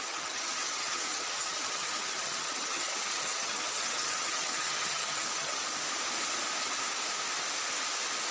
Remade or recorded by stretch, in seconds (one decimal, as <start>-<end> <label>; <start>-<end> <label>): 0.0-5.6 remade; 5.6-8.3 recorded